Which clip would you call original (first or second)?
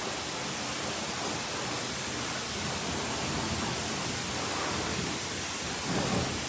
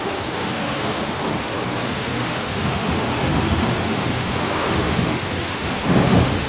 first